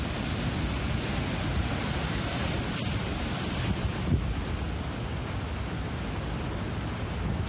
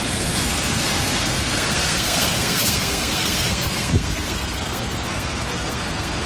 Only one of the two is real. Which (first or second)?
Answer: first